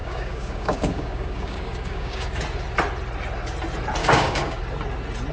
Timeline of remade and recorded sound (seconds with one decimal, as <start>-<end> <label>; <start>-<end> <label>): 0.0-2.4 remade; 2.4-4.0 recorded; 4.0-4.6 remade; 4.6-5.3 recorded